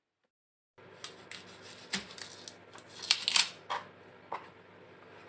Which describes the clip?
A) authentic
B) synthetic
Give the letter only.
A